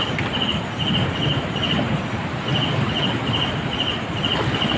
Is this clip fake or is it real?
real